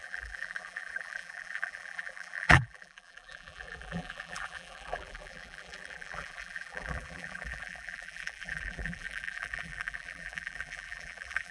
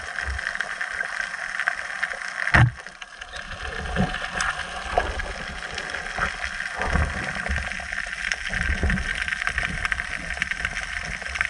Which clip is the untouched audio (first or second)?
second